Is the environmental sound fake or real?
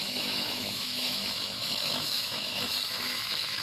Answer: fake